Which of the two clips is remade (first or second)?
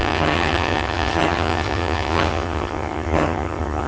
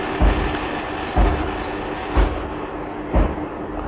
first